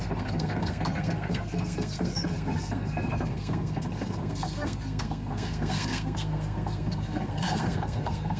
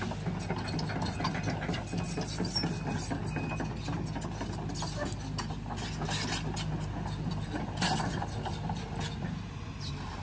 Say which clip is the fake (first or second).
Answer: first